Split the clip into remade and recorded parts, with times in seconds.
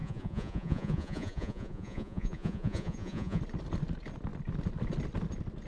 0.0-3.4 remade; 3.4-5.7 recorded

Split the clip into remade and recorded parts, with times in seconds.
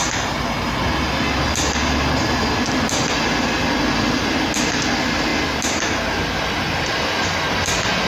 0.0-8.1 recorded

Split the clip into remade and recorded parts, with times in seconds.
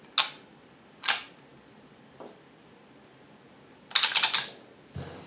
0.0-5.3 recorded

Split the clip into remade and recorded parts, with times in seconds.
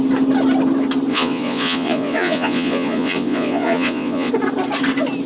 0.0-1.1 recorded; 1.1-4.3 remade; 4.3-5.3 recorded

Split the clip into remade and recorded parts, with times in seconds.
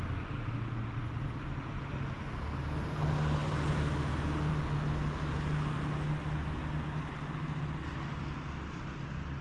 0.0-9.4 recorded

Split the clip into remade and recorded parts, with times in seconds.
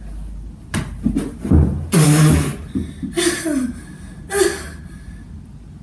0.0-5.8 recorded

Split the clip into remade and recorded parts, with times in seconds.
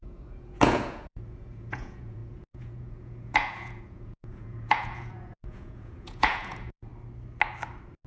0.0-6.9 remade; 6.9-8.1 recorded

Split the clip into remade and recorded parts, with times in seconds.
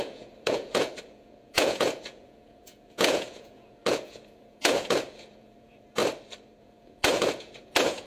0.0-6.0 remade; 6.0-6.6 recorded; 6.6-8.1 remade